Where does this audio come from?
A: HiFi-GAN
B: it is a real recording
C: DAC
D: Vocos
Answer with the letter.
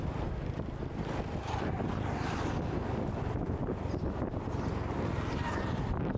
B